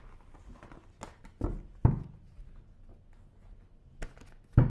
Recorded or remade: recorded